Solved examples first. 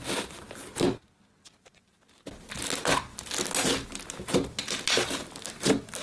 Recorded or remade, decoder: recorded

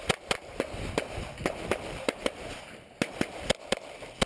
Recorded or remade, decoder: recorded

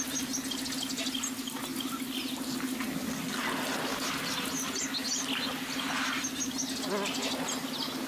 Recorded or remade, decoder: recorded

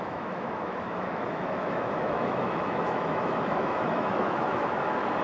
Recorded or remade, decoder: remade, autoencoder, DAC-VAE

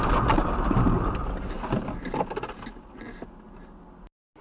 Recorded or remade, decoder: recorded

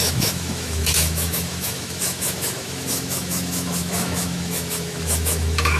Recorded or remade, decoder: remade, autoencoder, DAC-VAE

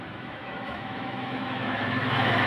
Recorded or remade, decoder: remade, autoencoder, DAC-VAE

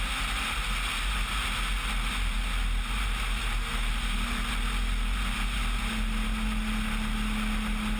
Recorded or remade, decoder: recorded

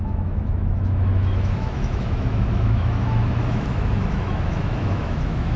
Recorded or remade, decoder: remade, autoencoder, DAC-VAE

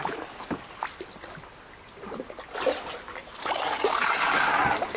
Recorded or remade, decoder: recorded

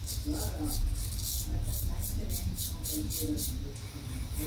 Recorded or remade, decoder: recorded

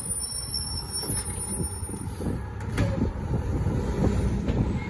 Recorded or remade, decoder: recorded